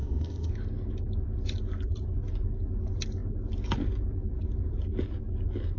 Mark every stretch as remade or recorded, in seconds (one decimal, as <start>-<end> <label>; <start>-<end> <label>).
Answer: 0.0-0.5 remade; 0.5-5.8 recorded